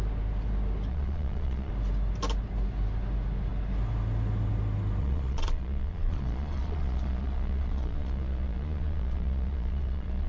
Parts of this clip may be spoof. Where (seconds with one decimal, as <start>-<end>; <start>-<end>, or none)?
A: 0.9-1.7; 5.0-10.3